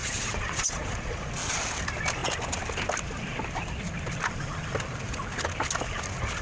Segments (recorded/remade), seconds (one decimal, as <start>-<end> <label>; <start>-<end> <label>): 0.0-1.3 remade; 1.3-6.4 recorded